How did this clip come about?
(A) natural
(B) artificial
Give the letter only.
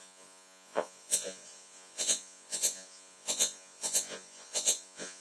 B